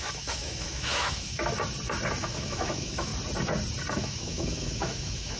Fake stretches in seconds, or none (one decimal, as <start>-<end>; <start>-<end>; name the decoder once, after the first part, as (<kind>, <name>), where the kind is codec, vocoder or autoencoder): 0.0-1.4 (autoencoder, DAC-VAE); 2.2-3.1; 3.9-5.4